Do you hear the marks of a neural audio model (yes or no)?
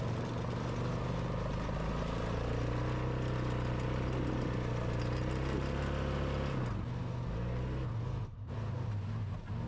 no